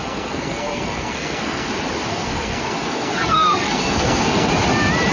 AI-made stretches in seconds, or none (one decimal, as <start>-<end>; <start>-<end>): 0.0-1.7; 2.1-4.5